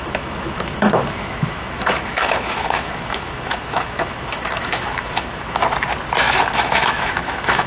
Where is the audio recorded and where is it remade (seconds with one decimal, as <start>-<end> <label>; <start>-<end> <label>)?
0.0-5.6 remade; 5.6-6.3 recorded; 6.3-7.7 remade